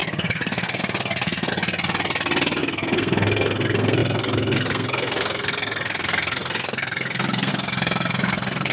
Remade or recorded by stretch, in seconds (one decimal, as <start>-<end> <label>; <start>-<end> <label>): 0.0-1.5 remade; 1.5-2.6 recorded; 2.6-8.7 remade